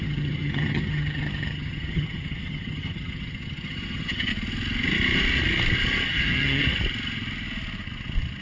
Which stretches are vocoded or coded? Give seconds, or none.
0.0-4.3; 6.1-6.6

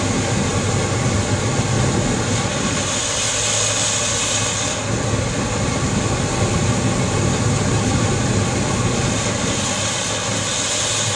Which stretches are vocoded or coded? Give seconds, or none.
none

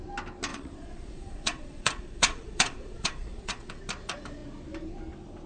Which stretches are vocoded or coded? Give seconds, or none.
0.5-3.8

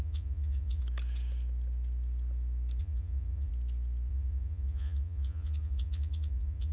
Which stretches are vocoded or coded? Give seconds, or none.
0.0-0.8; 2.8-3.5; 4.1-6.7

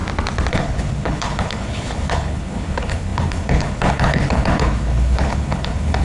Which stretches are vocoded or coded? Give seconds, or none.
0.5-6.0